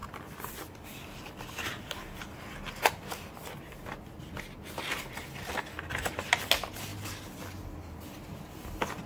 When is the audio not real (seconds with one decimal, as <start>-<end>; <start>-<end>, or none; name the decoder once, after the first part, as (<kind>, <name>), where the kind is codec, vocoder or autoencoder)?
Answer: none